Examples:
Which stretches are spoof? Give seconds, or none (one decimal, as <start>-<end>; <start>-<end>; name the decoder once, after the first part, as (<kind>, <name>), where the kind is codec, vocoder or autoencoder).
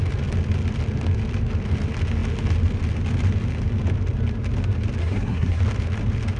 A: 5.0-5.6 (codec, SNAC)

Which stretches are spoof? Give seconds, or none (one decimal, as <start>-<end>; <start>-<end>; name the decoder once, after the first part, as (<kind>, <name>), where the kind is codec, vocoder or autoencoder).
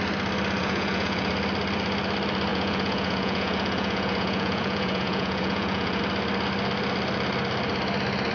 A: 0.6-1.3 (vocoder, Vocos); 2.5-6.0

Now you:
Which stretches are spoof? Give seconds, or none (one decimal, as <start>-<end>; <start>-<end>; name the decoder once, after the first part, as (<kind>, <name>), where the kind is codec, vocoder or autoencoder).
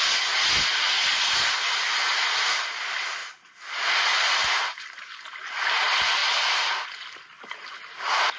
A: none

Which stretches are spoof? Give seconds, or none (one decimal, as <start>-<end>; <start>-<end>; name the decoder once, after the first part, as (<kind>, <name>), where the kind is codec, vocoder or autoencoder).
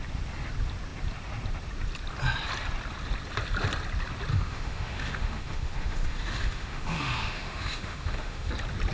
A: 4.3-8.5 (autoencoder, DAC-VAE)